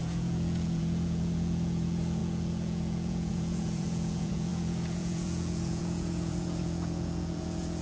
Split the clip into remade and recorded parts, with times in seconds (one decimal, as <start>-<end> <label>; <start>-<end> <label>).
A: 0.0-7.8 remade